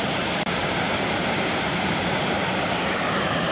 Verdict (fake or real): fake